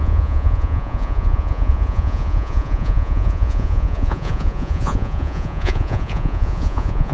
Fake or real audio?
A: fake